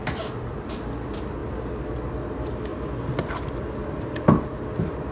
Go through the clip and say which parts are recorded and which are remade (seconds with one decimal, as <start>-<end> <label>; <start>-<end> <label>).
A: 0.0-5.1 recorded